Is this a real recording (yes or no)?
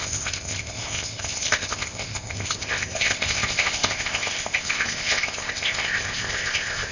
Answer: no